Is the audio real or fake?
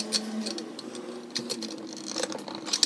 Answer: real